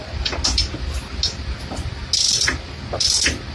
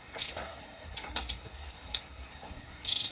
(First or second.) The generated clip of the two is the second